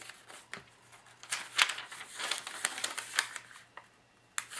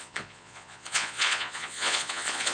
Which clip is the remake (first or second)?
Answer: second